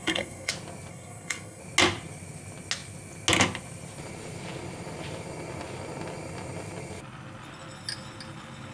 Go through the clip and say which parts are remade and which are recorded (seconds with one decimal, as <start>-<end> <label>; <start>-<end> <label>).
0.0-0.5 remade; 0.5-0.9 recorded; 0.9-1.6 remade; 1.6-8.7 recorded